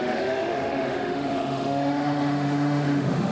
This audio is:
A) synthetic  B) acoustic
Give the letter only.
A